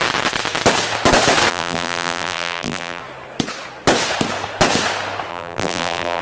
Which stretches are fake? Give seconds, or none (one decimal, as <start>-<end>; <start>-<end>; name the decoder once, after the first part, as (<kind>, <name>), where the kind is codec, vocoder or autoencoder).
1.5-3.0 (vocoder, BigVGAN v2); 5.3-6.2